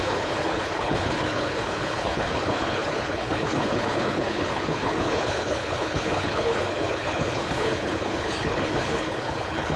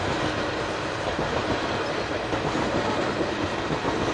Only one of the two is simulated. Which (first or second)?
first